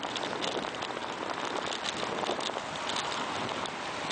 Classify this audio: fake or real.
real